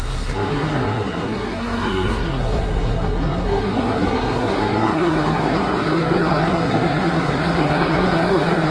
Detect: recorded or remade remade